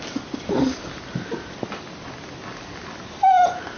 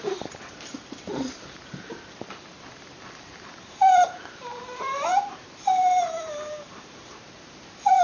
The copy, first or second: second